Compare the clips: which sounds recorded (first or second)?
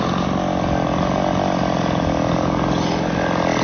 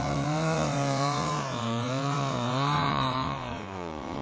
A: first